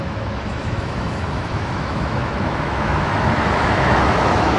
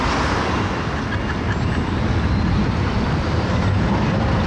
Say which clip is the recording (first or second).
second